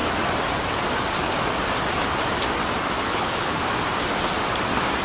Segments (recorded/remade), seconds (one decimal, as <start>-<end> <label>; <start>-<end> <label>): 0.0-3.0 recorded; 3.0-3.6 remade; 3.6-5.0 recorded